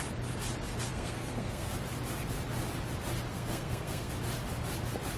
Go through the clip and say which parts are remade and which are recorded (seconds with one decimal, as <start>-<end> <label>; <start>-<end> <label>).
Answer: 0.0-0.9 recorded; 0.9-1.7 remade; 1.7-3.3 recorded; 3.3-4.1 remade; 4.1-5.2 recorded